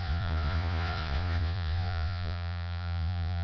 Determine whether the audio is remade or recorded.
remade